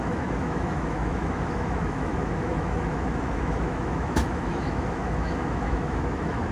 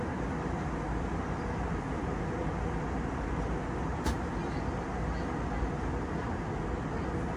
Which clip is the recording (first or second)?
second